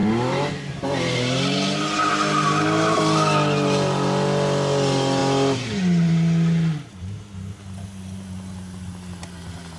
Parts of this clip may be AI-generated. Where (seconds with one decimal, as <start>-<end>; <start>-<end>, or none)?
none